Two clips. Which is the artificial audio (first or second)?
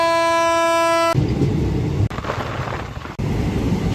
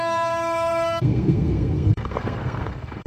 second